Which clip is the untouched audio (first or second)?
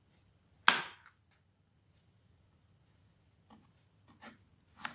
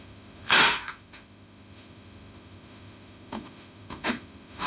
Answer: first